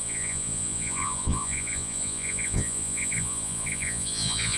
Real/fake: fake